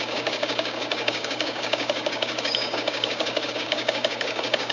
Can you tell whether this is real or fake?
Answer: fake